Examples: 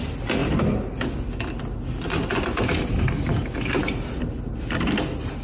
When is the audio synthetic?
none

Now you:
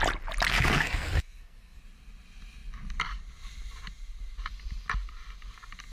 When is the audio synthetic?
0.5-1.8

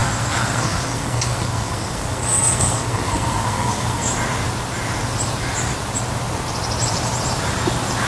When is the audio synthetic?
0.0-4.1

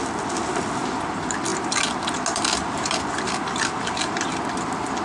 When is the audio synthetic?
none

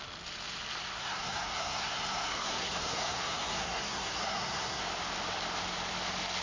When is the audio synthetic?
1.0-4.8